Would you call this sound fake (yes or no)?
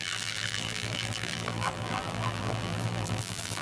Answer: yes